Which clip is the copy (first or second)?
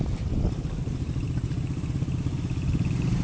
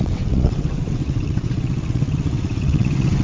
second